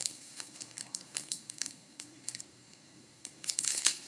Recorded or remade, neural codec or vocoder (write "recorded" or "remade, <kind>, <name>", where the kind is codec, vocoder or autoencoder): remade, codec, SNAC